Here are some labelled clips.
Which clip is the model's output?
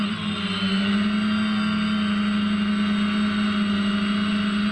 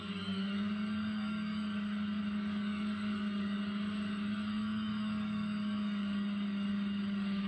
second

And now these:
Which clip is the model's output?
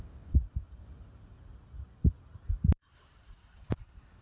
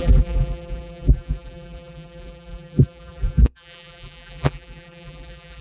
second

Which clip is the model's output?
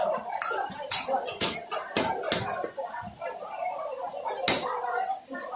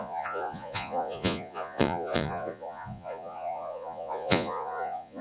second